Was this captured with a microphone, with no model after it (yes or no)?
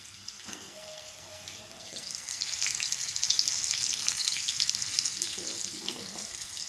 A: no